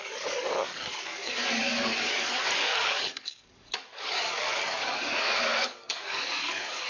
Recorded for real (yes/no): no